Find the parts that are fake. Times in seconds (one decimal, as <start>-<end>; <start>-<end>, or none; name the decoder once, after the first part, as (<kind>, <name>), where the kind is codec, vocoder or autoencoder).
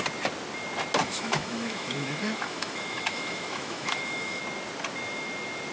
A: 1.0-4.4 (autoencoder, DAC-VAE)